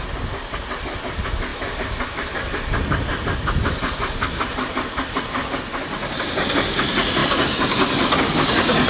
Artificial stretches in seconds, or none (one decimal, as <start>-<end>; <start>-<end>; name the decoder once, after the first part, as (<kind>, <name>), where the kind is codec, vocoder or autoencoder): none

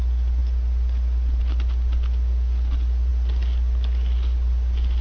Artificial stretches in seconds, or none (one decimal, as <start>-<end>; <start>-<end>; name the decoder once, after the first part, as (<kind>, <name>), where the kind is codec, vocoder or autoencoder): none

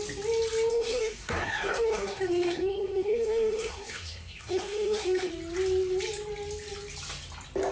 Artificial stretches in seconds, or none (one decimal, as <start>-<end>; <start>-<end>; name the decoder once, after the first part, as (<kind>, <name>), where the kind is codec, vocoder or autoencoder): 0.7-5.3 (codec, SNAC)

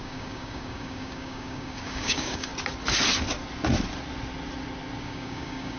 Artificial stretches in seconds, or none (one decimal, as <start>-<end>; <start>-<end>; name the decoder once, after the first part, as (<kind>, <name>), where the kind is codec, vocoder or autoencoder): 0.0-2.5 (codec, DAC); 5.0-5.8

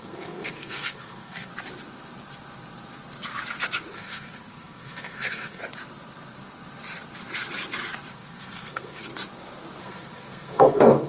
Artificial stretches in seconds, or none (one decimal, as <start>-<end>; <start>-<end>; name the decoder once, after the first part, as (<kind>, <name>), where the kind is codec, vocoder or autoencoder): 0.0-1.5 (codec, SNAC); 3.9-5.6; 8.1-9.0; 9.8-11.1

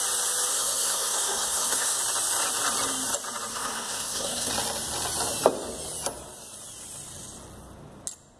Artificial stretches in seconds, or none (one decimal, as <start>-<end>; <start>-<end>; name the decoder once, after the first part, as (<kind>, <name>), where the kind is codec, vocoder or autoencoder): 0.5-2.0 (codec, SNAC); 3.5-4.5

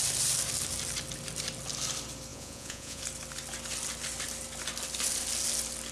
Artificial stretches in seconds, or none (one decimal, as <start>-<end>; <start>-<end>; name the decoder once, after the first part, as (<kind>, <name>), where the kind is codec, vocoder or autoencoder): 2.3-3.0 (vocoder, Vocos)